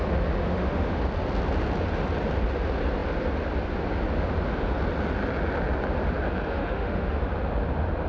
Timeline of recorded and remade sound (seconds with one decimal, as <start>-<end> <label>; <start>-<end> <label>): 0.0-0.4 recorded; 0.4-1.0 remade; 1.0-6.5 recorded; 6.5-7.2 remade; 7.2-8.1 recorded